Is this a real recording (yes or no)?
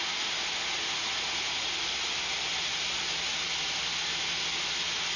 yes